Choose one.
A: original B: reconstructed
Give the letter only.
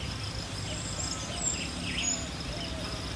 A